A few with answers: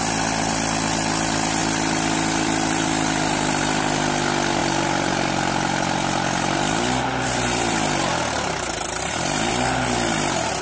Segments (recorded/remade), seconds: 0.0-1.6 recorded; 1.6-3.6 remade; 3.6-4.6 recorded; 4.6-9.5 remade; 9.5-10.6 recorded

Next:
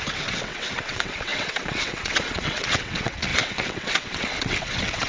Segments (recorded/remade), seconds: 0.0-5.1 remade

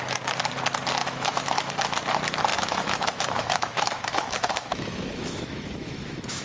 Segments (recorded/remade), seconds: 0.0-1.0 recorded; 1.0-1.7 remade; 1.7-2.5 recorded; 2.5-6.4 remade

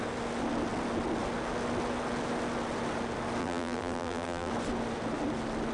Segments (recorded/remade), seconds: 0.0-3.4 recorded; 3.4-4.5 remade; 4.5-5.7 recorded

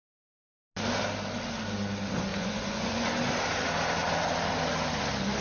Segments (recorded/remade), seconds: 0.0-2.3 recorded; 2.3-3.1 remade; 3.1-5.4 recorded

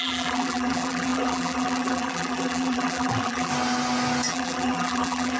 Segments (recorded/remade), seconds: 0.0-3.5 remade; 3.5-4.3 recorded; 4.3-5.4 remade

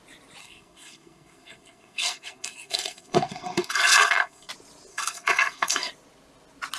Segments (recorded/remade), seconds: 0.0-0.4 recorded; 0.4-4.5 remade; 4.5-4.9 recorded; 4.9-5.9 remade; 5.9-6.8 recorded